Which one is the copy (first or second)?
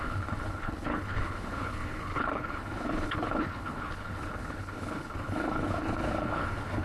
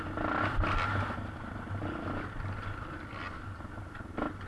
first